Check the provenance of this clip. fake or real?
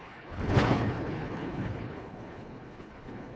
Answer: fake